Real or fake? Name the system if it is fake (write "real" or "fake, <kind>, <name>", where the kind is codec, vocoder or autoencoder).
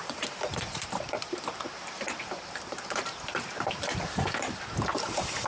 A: fake, vocoder, BigVGAN v2